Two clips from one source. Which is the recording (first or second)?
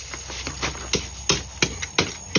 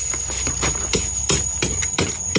first